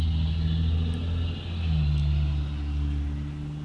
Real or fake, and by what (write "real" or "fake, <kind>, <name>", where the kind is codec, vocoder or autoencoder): real